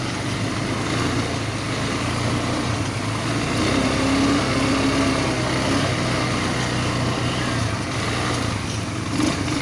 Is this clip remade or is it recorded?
recorded